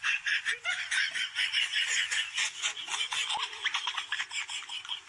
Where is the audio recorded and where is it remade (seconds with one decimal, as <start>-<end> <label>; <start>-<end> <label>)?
0.0-2.8 remade; 2.8-5.1 recorded